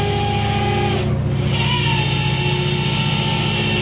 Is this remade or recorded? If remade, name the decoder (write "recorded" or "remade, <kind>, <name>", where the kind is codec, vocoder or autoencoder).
recorded